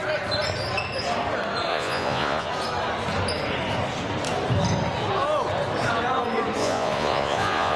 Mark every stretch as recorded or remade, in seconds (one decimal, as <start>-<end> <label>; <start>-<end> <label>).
0.0-1.7 recorded; 1.7-2.5 remade; 2.5-6.6 recorded; 6.6-7.8 remade